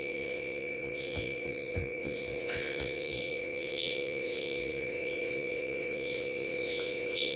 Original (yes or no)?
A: no